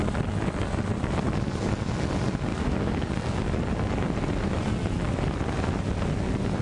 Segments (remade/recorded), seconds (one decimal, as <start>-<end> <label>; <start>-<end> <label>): 0.0-2.5 recorded; 2.5-3.4 remade; 3.4-6.6 recorded